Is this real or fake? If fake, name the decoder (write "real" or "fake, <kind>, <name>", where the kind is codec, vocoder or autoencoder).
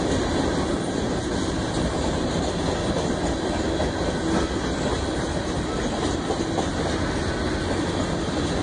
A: real